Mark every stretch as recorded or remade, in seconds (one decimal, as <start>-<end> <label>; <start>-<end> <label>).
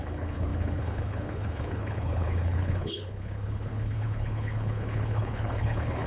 0.0-6.1 remade